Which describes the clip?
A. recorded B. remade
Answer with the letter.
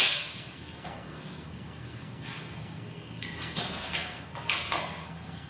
B